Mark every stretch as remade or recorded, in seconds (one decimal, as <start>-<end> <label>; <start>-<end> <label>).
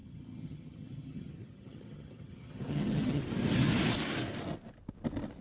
0.0-3.2 remade; 3.2-5.4 recorded